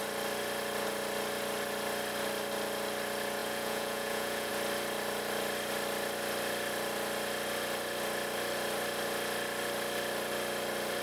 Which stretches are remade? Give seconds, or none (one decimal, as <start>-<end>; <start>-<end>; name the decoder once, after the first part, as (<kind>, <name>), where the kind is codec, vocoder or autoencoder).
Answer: 3.4-4.5 (vocoder, Vocos)